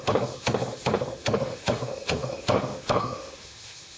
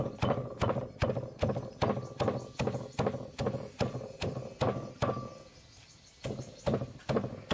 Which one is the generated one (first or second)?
first